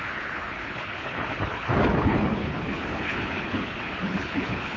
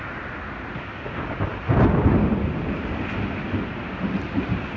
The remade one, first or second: first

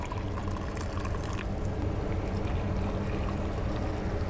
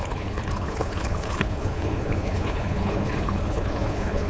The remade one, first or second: second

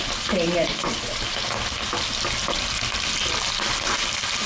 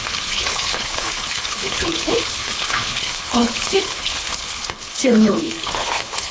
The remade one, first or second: second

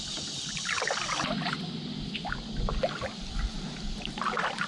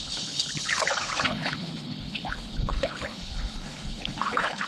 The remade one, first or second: second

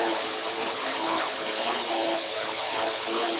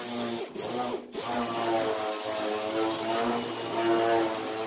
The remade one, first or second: first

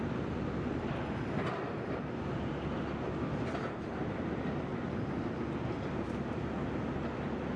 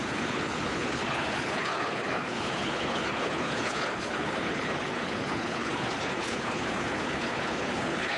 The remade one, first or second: second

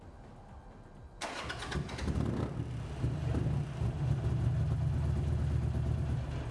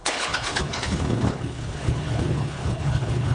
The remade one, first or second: second